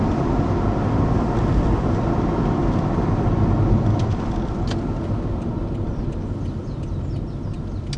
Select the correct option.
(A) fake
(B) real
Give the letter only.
B